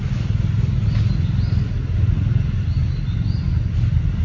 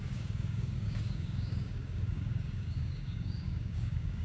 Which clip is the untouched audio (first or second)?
first